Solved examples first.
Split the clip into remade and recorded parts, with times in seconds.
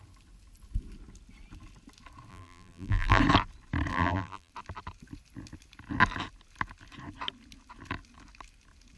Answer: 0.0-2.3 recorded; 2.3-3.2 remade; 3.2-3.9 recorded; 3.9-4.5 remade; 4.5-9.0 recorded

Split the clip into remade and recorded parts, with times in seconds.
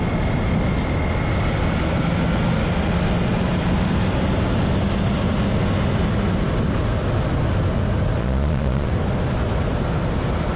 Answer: 0.0-8.2 recorded; 8.2-8.9 remade; 8.9-10.6 recorded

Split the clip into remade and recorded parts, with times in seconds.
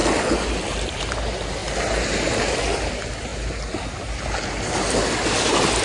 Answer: 0.0-5.8 recorded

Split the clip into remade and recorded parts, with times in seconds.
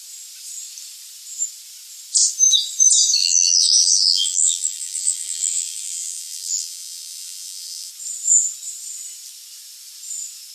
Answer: 0.0-3.2 recorded; 3.2-7.9 remade; 7.9-10.5 recorded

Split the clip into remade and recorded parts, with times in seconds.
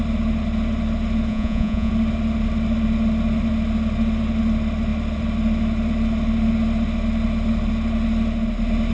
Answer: 0.0-1.3 recorded; 1.3-1.9 remade; 1.9-8.9 recorded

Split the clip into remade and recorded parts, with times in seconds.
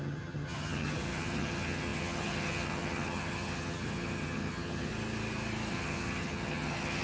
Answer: 0.0-4.9 remade; 4.9-5.7 recorded; 5.7-7.0 remade